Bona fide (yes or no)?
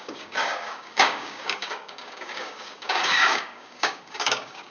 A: no